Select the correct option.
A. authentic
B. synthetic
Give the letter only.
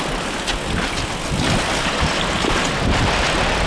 A